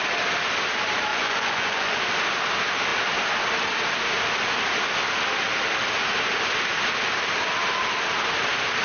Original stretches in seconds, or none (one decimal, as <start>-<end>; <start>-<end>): 0.0-1.1; 2.0-8.8